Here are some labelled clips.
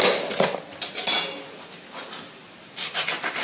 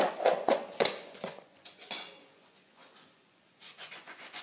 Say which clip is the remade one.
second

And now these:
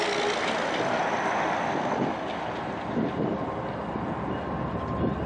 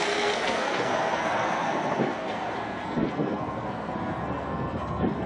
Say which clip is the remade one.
second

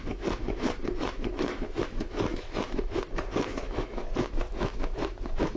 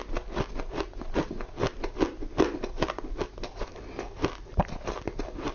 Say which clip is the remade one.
first